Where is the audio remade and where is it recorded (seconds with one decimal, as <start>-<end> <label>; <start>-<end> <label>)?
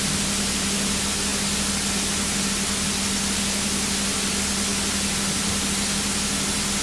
0.0-6.8 recorded